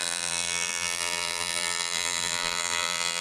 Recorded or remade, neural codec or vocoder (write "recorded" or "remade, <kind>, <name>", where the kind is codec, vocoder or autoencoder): remade, vocoder, BigVGAN v2